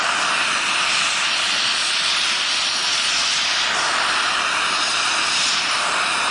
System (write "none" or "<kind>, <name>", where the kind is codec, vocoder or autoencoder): none